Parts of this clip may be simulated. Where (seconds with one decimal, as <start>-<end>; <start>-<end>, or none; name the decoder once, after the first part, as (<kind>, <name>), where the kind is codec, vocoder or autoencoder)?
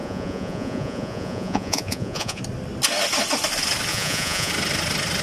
0.0-2.4 (vocoder, Vocos); 3.9-4.5